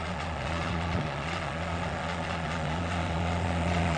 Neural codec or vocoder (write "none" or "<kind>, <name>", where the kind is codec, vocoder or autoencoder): vocoder, Vocos